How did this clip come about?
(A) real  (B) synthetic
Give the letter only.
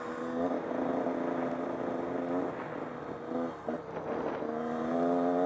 A